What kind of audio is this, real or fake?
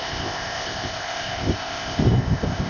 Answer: fake